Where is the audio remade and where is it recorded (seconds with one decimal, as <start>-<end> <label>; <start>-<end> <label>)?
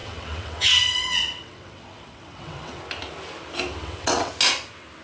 0.0-2.8 remade; 2.8-3.8 recorded; 3.8-4.3 remade; 4.3-5.0 recorded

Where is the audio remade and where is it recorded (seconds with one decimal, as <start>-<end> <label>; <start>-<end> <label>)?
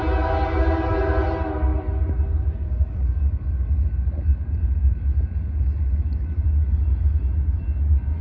0.0-8.2 recorded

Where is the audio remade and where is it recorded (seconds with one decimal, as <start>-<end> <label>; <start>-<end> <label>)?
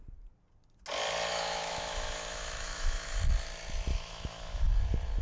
0.0-1.3 recorded; 1.3-3.2 remade; 3.2-3.9 recorded; 3.9-4.7 remade; 4.7-5.2 recorded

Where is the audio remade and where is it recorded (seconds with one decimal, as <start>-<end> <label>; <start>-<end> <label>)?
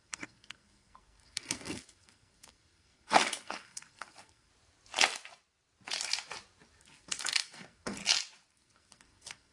0.0-4.5 remade; 4.5-6.8 recorded; 6.8-8.0 remade; 8.0-8.5 recorded; 8.5-9.5 remade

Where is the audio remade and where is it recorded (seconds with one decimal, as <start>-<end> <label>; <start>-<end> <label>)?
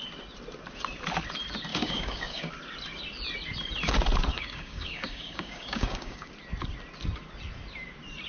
0.0-1.7 recorded; 1.7-2.5 remade; 2.5-4.3 recorded; 4.3-6.3 remade; 6.3-8.3 recorded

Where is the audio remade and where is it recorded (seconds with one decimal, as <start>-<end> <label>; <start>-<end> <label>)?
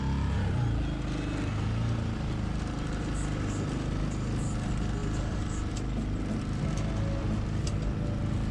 0.0-8.5 recorded